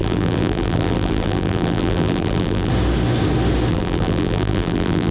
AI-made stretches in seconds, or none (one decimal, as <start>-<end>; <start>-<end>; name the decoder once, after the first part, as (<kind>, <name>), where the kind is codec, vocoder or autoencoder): 0.0-2.7 (vocoder, BigVGAN v2); 3.7-5.1